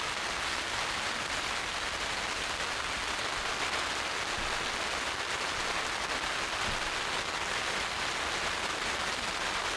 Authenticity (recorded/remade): recorded